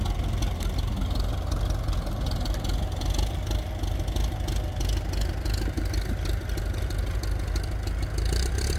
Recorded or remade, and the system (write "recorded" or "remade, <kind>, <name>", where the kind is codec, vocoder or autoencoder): recorded